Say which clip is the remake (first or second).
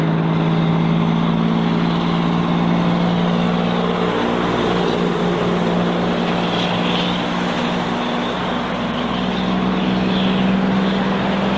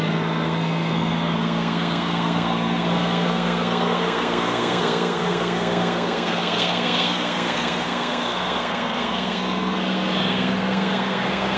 second